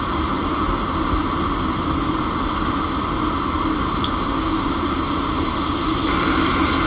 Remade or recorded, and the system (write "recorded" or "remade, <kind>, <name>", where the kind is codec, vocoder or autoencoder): recorded